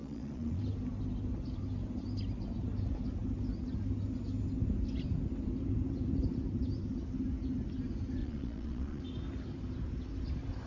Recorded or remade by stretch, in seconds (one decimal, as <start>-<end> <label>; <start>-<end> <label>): 0.0-0.6 remade; 0.6-8.2 recorded; 8.2-9.0 remade; 9.0-10.7 recorded